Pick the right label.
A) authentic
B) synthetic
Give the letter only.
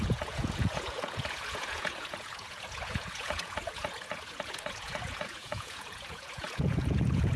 B